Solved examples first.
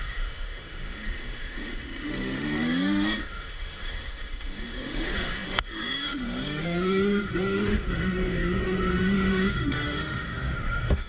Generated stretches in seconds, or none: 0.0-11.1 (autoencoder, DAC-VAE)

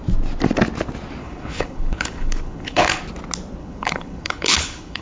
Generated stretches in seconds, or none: 1.2-3.0 (codec, HILCodec); 3.6-5.0

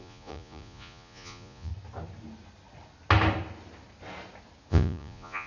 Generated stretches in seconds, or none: 0.0-1.7 (vocoder, Vocos); 4.7-5.5

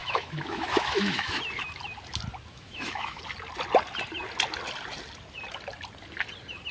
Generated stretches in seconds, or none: 0.0-1.4 (autoencoder, DAC-VAE); 2.5-3.2

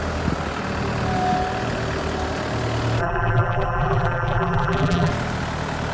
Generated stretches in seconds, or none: 3.0-5.1 (vocoder, BigVGAN v2)

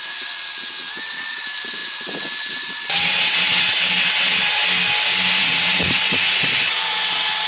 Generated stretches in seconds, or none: 0.0-4.6 (vocoder, WaveNeXt); 5.4-7.5

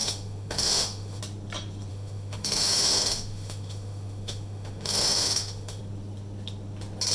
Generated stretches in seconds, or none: 0.0-1.2 (autoencoder, DAC-VAE); 1.9-5.8